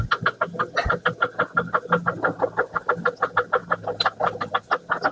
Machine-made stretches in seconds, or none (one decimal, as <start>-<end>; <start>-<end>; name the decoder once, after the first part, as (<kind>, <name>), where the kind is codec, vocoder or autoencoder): none